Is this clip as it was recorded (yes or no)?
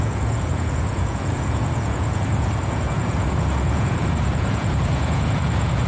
no